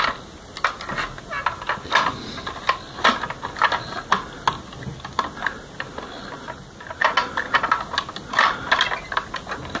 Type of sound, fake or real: real